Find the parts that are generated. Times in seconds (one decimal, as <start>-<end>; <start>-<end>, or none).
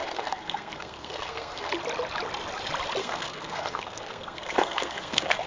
0.0-1.7; 3.0-5.5